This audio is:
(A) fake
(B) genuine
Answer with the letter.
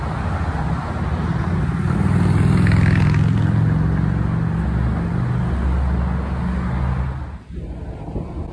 B